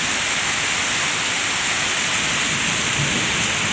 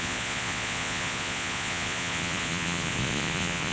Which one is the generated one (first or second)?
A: second